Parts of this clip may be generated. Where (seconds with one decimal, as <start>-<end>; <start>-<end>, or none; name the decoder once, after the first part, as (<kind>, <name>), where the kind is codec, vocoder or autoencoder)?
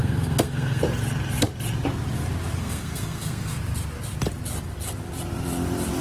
0.0-0.8 (codec, SNAC); 2.6-3.6